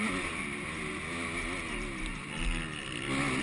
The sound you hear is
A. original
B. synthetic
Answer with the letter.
A